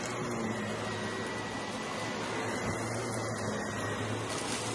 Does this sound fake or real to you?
real